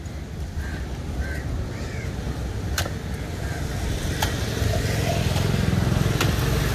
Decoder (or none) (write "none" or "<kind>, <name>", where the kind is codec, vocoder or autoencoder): none